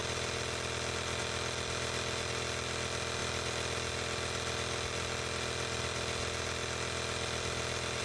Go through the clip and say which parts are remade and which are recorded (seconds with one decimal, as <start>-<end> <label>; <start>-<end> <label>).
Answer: 0.0-8.0 recorded